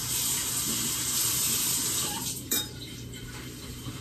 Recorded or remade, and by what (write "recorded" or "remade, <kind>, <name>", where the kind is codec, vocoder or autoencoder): remade, vocoder, BigVGAN v2